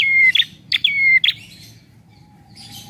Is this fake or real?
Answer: real